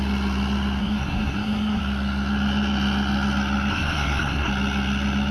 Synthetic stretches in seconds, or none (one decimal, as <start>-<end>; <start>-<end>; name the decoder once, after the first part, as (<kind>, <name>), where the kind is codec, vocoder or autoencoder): 0.8-1.8 (codec, SNAC); 3.7-4.5